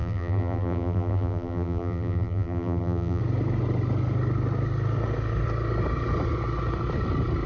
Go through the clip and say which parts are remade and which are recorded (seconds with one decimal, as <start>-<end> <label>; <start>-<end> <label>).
0.0-3.2 remade; 3.2-7.5 recorded